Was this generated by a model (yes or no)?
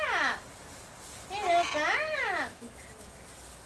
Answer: no